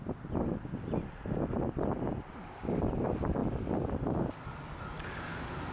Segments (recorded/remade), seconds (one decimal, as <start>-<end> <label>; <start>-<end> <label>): 0.0-5.7 recorded